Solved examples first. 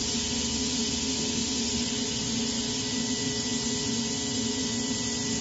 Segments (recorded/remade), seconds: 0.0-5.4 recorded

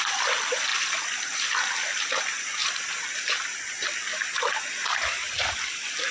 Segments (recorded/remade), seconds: 0.0-0.7 remade; 0.7-2.1 recorded; 2.1-2.6 remade; 2.6-5.1 recorded; 5.1-6.1 remade